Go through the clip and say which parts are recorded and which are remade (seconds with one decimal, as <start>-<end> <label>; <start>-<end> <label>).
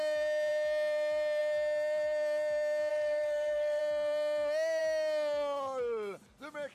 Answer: 0.0-2.9 recorded; 2.9-3.8 remade; 3.8-6.7 recorded